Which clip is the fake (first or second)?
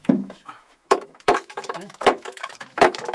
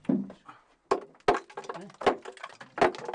first